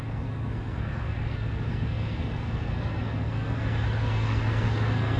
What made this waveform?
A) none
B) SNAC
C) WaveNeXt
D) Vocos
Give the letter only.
B